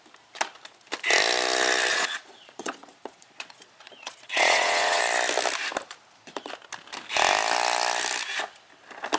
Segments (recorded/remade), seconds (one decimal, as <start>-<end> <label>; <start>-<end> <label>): 0.0-1.9 recorded; 1.9-5.0 remade; 5.0-9.2 recorded